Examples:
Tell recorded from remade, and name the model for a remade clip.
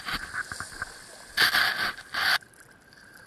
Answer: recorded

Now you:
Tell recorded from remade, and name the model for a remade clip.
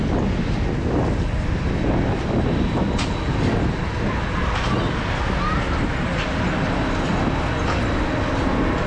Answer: recorded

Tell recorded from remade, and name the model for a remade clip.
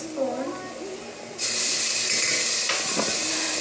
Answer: recorded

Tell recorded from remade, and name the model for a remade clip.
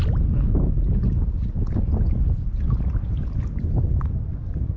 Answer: recorded